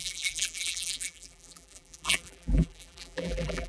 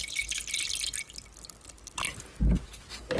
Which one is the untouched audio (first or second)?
second